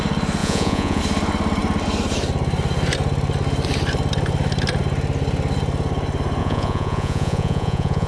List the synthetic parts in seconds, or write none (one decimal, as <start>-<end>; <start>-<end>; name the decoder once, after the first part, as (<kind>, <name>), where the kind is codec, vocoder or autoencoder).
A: 0.4-1.0 (vocoder, Vocos); 6.4-8.1